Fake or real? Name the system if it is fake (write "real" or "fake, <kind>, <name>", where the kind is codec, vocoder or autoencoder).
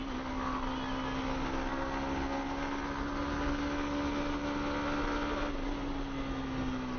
real